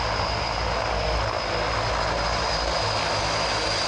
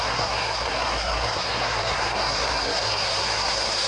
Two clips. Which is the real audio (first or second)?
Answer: first